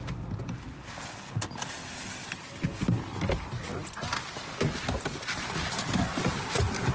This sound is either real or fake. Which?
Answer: real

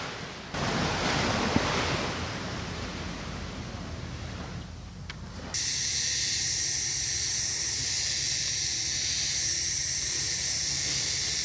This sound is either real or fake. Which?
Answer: real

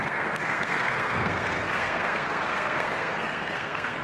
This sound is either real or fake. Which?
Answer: fake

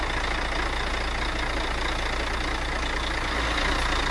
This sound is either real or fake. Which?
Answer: real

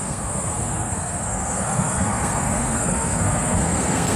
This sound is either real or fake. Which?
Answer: fake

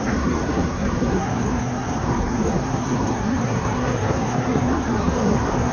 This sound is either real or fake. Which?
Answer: fake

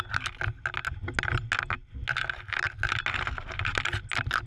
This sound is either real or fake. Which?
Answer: real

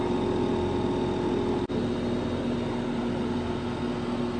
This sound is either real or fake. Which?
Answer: real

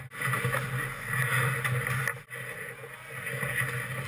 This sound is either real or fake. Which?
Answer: real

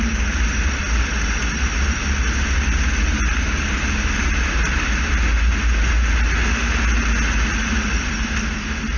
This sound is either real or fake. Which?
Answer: real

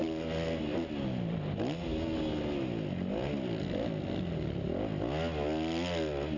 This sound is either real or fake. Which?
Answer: real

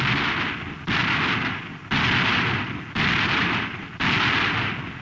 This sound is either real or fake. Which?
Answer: real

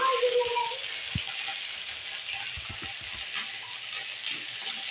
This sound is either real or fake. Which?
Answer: real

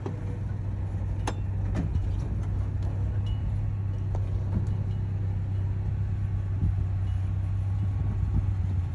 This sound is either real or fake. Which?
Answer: real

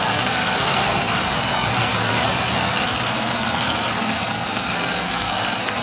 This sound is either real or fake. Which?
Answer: fake